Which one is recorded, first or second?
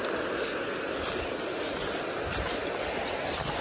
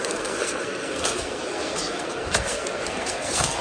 first